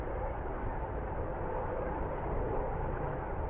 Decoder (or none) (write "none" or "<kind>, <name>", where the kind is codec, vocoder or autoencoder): none